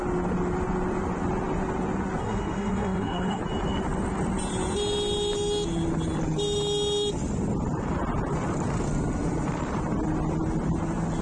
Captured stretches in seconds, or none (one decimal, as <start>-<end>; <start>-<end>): 0.0-2.2; 3.4-11.2